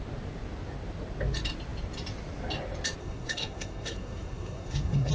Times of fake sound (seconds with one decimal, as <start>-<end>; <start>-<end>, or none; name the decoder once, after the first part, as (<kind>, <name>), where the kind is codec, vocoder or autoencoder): 3.0-5.1 (codec, SNAC)